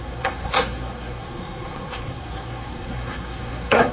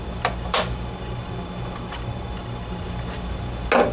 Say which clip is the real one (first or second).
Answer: second